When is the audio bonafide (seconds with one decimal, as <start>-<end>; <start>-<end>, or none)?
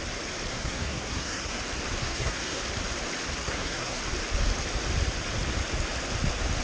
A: 0.0-0.5; 1.6-2.0; 2.6-3.4; 4.0-6.6